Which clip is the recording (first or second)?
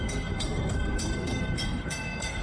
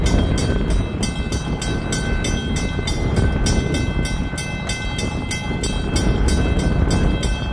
second